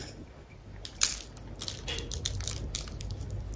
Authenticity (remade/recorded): recorded